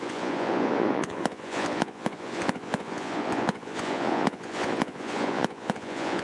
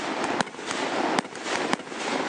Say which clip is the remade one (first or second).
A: first